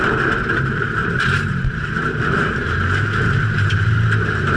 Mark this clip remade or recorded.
remade